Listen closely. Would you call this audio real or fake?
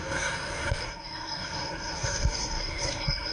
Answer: fake